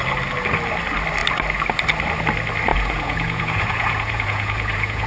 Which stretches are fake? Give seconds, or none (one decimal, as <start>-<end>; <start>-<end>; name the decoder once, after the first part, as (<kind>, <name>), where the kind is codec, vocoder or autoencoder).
2.7-5.1 (vocoder, Vocos)